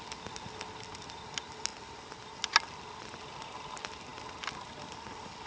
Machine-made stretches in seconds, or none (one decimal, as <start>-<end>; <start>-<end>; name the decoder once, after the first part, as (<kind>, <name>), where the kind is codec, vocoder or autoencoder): none